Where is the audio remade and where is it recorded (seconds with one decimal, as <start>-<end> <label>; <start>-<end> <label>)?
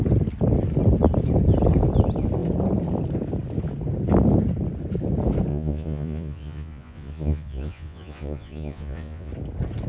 0.0-5.5 recorded; 5.5-9.3 remade; 9.3-9.9 recorded